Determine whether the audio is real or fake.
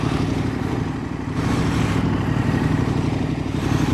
real